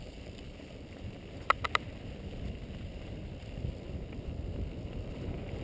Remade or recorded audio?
recorded